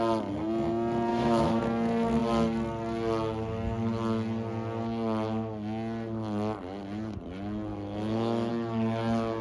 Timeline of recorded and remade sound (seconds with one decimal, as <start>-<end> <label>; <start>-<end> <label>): 0.0-1.1 recorded; 1.1-1.6 remade; 1.6-7.7 recorded; 7.7-8.5 remade; 8.5-9.4 recorded